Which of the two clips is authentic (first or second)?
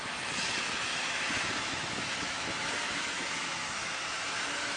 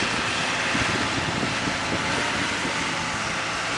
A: second